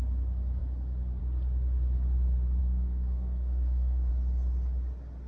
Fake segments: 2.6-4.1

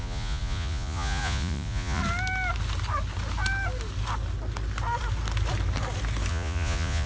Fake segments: 0.0-2.0; 6.3-7.1

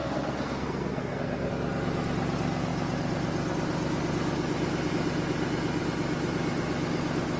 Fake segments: 0.0-1.5

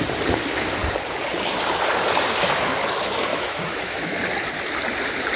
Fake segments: 3.3-4.2

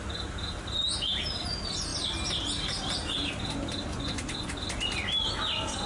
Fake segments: 3.9-4.5

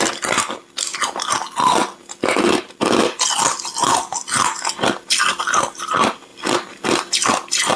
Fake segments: none

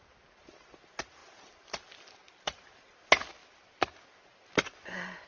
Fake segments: 1.2-2.7; 3.4-4.0